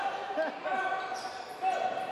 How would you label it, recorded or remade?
recorded